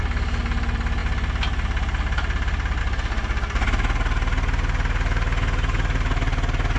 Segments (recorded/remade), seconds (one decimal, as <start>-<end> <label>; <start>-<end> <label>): 0.0-6.8 recorded